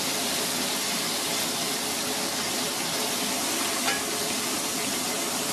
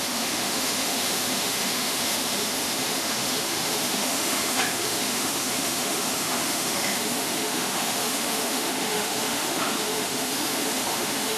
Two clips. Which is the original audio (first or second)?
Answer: first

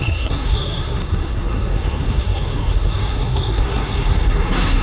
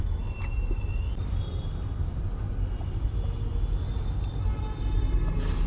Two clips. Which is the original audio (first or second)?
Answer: second